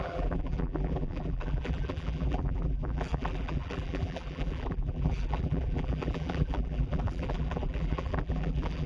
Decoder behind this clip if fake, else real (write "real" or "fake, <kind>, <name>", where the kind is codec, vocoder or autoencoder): fake, vocoder, BigVGAN v2